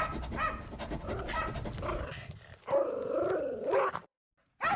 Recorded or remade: recorded